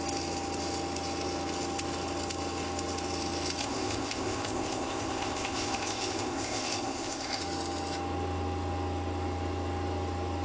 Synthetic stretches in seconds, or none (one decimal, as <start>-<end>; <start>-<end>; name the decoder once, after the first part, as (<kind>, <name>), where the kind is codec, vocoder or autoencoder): 3.6-7.4 (codec, ZipCodec)